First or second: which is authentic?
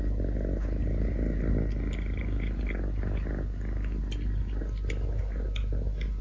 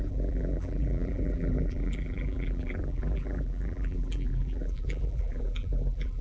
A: first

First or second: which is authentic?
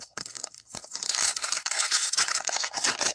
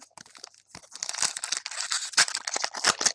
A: second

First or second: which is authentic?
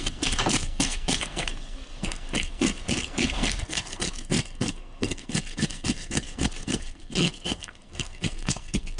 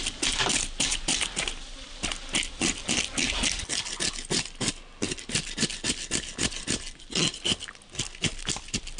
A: second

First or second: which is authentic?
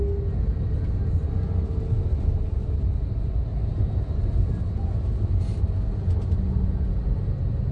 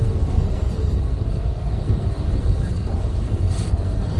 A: first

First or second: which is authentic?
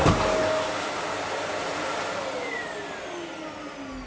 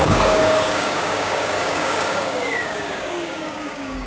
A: first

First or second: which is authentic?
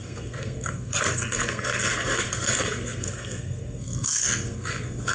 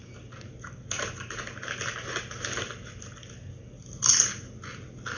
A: second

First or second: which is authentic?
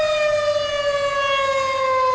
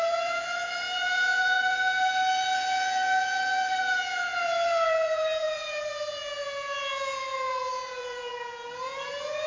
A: first